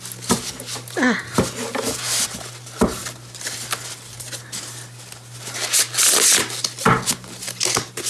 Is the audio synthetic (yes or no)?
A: no